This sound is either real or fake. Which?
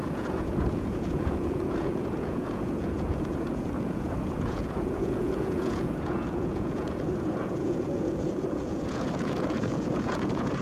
fake